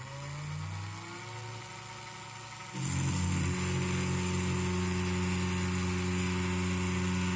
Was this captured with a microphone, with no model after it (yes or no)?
yes